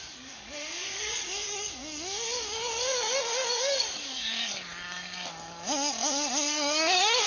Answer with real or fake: fake